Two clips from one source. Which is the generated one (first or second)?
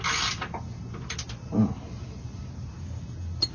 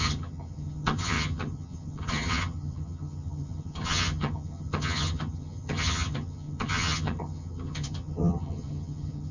second